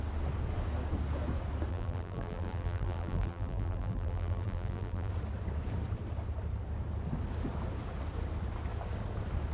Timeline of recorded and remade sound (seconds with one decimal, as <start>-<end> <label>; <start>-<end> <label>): 0.0-1.7 recorded; 1.7-5.1 remade; 5.1-9.5 recorded